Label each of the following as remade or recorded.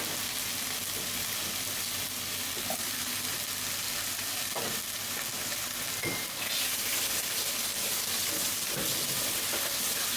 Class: recorded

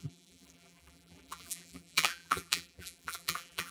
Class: remade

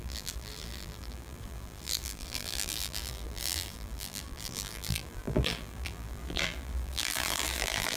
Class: remade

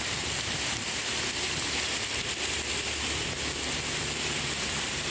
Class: remade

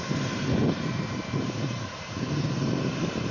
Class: remade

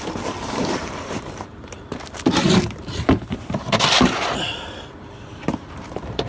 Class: remade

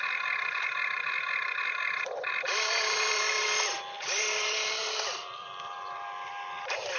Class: remade